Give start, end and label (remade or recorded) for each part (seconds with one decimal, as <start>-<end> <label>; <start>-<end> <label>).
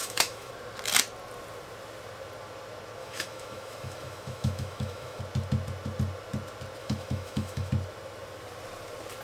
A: 0.0-0.5 remade; 0.5-3.0 recorded; 3.0-5.2 remade; 5.2-6.8 recorded; 6.8-7.7 remade; 7.7-9.2 recorded